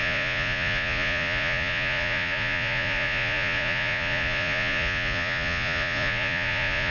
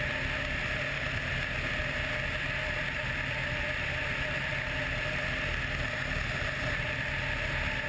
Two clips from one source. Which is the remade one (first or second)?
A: first